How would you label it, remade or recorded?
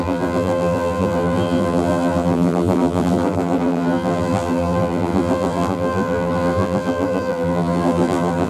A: remade